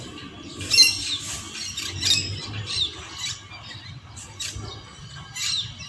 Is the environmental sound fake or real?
real